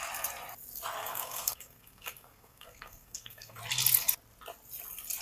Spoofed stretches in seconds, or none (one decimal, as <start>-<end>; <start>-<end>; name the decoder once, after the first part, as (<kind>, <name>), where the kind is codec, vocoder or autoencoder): 1.0-3.6 (codec, SNAC)